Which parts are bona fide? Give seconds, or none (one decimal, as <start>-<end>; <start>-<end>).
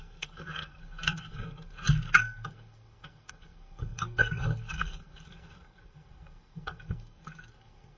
none